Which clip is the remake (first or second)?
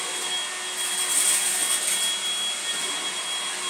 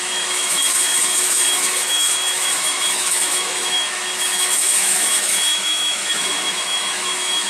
second